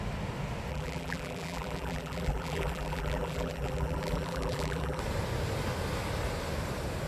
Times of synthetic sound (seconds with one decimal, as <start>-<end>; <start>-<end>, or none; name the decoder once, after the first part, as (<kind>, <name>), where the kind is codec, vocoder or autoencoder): 0.7-5.0 (vocoder, BigVGAN v2)